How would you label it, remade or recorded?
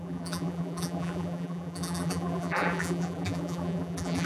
remade